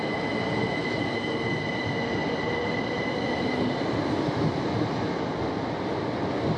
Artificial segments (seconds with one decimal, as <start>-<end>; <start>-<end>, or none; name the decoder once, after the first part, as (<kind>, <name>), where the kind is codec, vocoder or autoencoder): 2.2-4.2 (vocoder, BigVGAN v2)